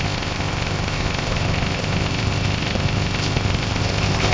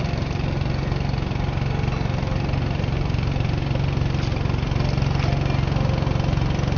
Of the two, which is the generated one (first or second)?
first